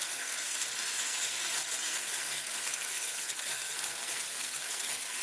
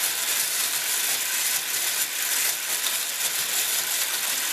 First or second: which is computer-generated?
first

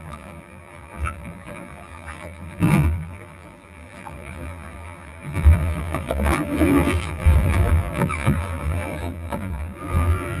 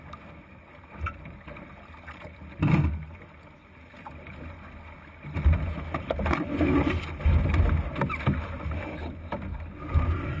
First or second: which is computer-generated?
first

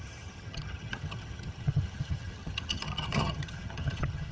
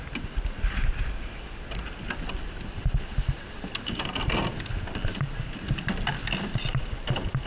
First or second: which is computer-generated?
first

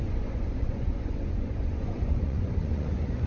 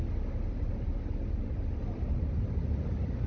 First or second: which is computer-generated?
first